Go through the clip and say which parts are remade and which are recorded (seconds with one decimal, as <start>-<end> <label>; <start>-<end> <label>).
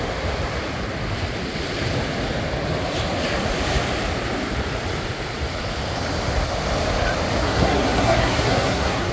0.0-7.4 recorded; 7.4-9.1 remade